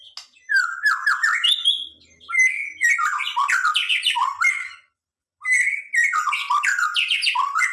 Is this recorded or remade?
recorded